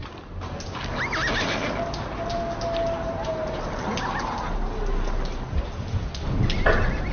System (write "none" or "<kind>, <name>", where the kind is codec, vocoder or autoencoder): none